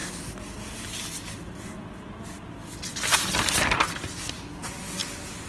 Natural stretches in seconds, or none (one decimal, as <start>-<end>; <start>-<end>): 0.0-5.5